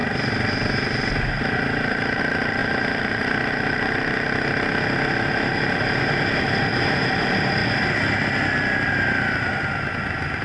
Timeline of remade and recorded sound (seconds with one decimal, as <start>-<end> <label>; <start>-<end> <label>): 0.0-2.2 recorded; 2.2-2.6 remade; 2.6-6.1 recorded; 6.1-7.6 remade; 7.6-10.0 recorded; 10.0-10.4 remade